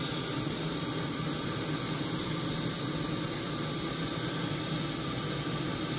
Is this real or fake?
real